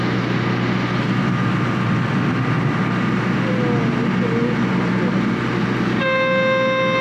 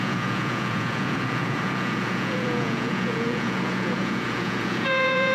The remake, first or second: second